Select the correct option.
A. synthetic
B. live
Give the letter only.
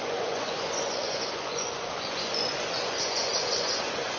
A